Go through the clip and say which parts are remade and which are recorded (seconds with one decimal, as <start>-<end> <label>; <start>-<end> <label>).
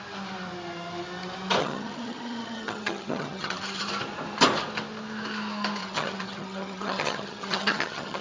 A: 0.0-1.6 recorded; 1.6-3.9 remade; 3.9-5.8 recorded; 5.8-8.2 remade